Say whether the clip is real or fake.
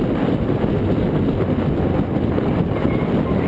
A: real